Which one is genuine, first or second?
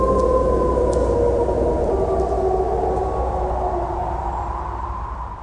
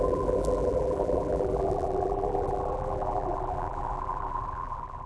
first